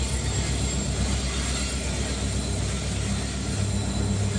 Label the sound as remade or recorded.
recorded